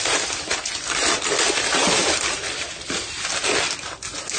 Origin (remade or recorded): recorded